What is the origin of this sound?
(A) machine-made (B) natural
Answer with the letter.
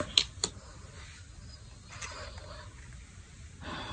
B